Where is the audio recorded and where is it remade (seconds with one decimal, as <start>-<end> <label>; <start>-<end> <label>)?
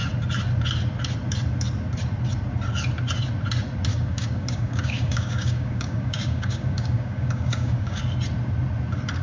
0.0-3.9 recorded; 3.9-8.0 remade; 8.0-9.2 recorded